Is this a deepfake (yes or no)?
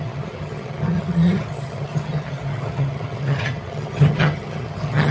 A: yes